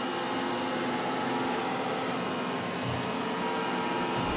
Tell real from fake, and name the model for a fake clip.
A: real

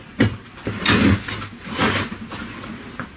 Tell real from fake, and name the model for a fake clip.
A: real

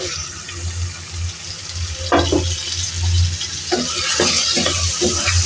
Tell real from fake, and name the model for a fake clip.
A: real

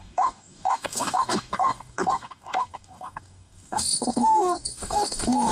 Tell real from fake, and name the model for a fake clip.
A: fake, codec, DAC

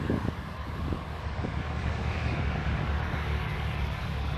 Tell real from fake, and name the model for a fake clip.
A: fake, codec, DAC